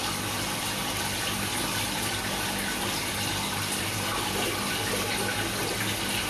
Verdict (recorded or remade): recorded